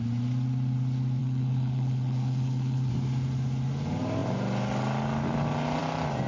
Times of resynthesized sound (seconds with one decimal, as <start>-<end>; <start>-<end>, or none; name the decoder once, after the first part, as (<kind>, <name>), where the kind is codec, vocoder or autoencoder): 1.2-2.9 (codec, HILCodec)